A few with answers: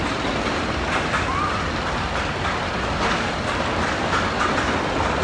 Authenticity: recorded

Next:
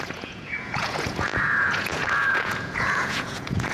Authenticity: remade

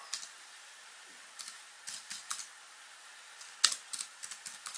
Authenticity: recorded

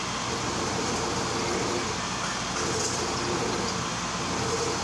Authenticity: recorded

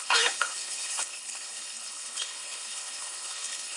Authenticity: remade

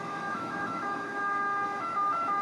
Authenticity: remade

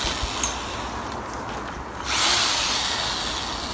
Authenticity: recorded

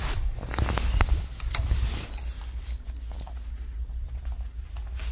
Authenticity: recorded